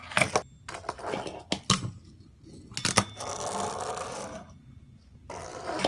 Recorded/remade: recorded